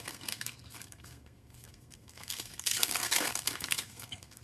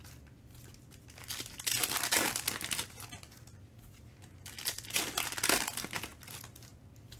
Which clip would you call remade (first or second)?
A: first